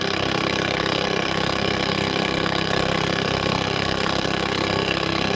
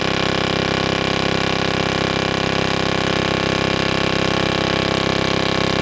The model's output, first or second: first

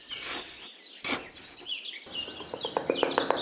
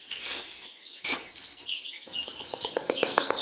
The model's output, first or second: second